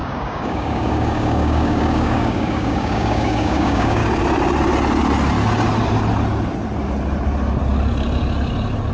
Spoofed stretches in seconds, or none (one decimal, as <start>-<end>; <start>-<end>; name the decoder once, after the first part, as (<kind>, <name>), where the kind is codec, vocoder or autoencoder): 0.0-4.0 (codec, DAC)